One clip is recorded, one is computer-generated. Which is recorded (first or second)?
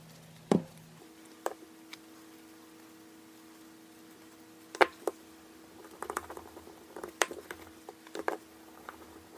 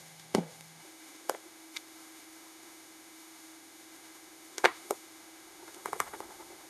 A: first